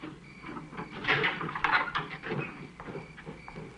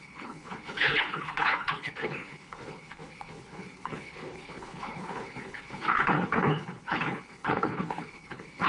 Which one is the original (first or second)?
first